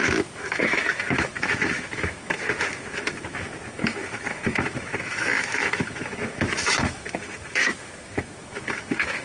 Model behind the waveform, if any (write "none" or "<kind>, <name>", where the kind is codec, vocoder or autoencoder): autoencoder, DAC-VAE